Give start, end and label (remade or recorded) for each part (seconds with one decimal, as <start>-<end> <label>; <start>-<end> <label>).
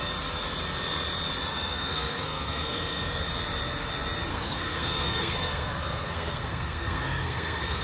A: 0.0-1.5 recorded; 1.5-3.3 remade; 3.3-4.3 recorded; 4.3-7.8 remade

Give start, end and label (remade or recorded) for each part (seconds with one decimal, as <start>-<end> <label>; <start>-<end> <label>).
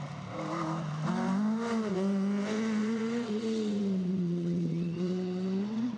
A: 0.0-2.8 recorded; 2.8-6.0 remade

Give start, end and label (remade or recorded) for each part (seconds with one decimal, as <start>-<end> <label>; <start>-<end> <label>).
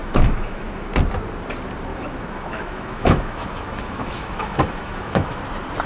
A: 0.0-0.9 remade; 0.9-1.9 recorded; 1.9-5.4 remade; 5.4-5.9 recorded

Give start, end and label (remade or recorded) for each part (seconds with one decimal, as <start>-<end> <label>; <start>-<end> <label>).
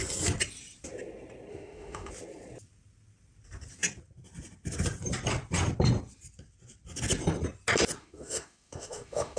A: 0.0-1.5 recorded; 1.5-2.1 remade; 2.1-8.0 recorded; 8.0-9.4 remade